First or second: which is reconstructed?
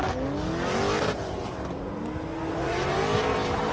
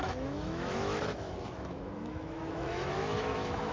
second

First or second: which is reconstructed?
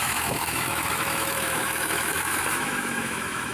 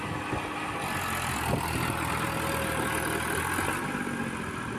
first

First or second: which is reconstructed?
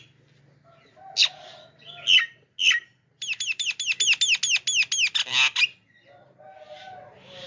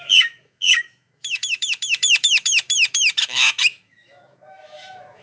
second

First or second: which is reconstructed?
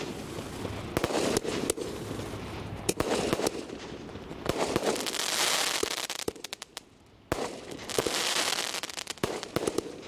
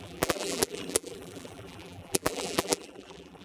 second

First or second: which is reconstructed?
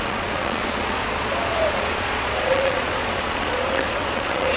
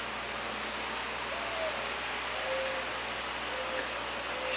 first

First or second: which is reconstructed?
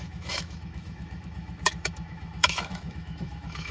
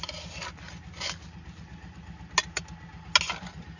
first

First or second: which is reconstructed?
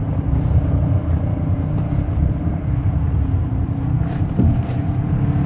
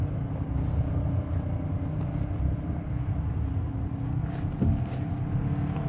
first